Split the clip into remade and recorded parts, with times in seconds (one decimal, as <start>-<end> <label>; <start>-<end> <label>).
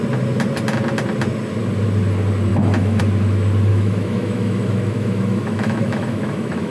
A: 0.0-2.5 recorded; 2.5-3.0 remade; 3.0-3.7 recorded; 3.7-6.7 remade